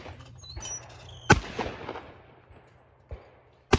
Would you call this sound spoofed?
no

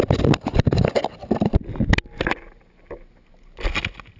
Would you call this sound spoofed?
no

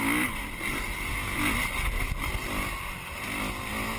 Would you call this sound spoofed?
no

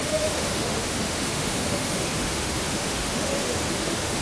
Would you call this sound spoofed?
yes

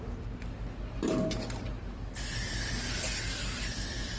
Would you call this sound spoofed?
no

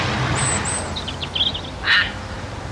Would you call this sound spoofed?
no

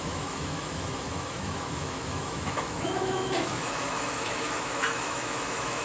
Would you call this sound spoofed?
yes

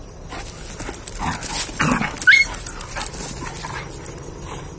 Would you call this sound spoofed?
no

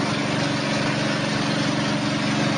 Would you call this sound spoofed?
no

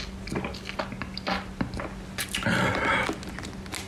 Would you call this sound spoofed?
no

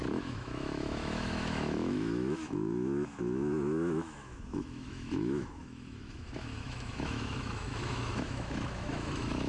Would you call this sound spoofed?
yes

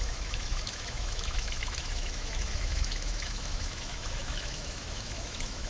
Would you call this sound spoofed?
yes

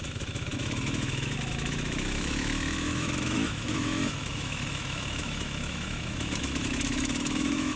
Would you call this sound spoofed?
yes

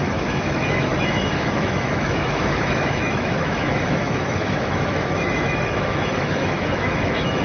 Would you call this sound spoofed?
yes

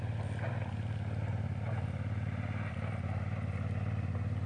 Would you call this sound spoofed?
no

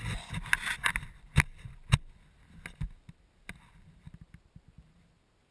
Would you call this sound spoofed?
no